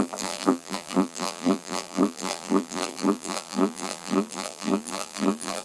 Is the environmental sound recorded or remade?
remade